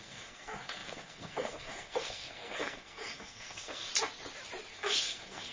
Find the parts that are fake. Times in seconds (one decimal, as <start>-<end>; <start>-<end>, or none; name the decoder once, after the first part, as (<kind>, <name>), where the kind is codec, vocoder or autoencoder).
0.0-3.9 (codec, SNAC); 4.7-5.5

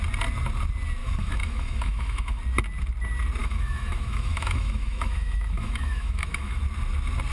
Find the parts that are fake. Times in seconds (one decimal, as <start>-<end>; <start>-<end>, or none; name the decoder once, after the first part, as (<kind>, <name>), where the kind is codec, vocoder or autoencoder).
1.0-2.4 (autoencoder, DAC-VAE); 3.4-6.6

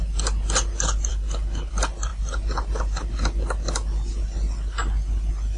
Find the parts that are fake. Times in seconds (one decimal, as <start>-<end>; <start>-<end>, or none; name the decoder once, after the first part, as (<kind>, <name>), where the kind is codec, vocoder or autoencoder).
1.1-1.7 (codec, HILCodec)

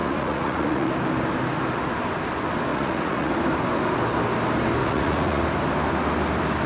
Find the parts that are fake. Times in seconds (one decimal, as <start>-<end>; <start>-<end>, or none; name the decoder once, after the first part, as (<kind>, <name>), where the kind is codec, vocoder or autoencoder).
0.0-0.9 (vocoder, Vocos); 2.7-3.3; 4.8-5.4